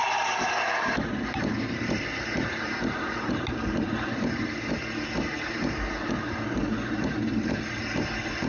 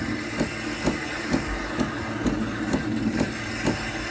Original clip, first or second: second